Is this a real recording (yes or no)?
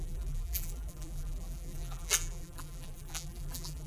no